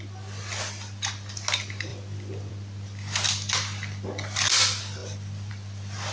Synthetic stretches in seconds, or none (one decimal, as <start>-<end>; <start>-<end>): 1.9-2.5; 5.0-5.5